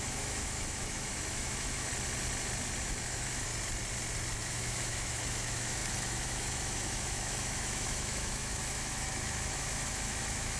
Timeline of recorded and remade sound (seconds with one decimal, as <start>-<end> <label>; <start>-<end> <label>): 0.0-1.9 remade; 1.9-2.8 recorded; 2.8-3.5 remade; 3.5-4.4 recorded; 4.4-10.6 remade